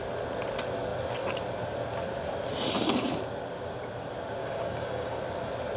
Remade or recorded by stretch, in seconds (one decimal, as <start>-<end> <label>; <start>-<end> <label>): 0.0-4.4 recorded; 4.4-5.2 remade; 5.2-5.8 recorded

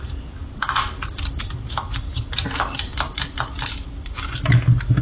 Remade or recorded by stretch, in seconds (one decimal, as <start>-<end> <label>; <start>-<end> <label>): 0.0-1.9 recorded; 1.9-4.2 remade; 4.2-5.0 recorded

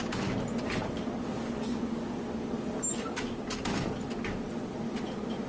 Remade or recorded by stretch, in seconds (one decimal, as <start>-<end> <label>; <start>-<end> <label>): 0.0-5.5 recorded

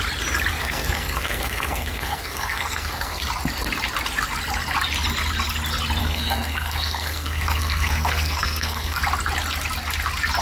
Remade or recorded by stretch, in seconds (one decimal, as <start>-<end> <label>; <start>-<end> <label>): 0.0-0.5 recorded; 0.5-3.2 remade; 3.2-6.0 recorded; 6.0-9.0 remade; 9.0-10.4 recorded

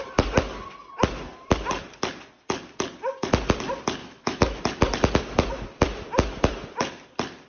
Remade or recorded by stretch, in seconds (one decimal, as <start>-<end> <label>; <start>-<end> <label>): 0.0-4.0 recorded; 4.0-4.6 remade; 4.6-7.5 recorded